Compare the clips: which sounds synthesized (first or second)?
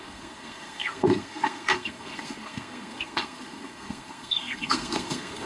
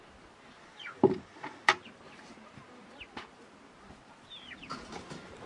first